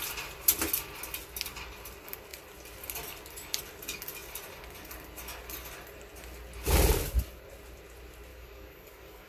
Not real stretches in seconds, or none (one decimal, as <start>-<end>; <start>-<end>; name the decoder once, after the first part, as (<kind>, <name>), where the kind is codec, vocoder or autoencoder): 8.3-9.3 (codec, DAC)